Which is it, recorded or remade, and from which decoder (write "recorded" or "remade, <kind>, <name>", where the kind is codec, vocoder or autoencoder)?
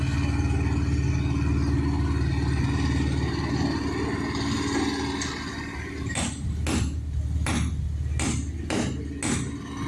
recorded